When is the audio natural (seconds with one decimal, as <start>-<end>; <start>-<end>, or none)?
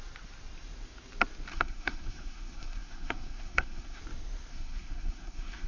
0.0-1.5; 4.0-4.5